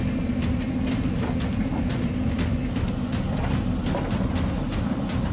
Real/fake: real